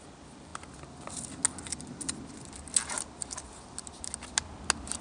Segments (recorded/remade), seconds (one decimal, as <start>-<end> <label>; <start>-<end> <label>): 0.0-5.0 recorded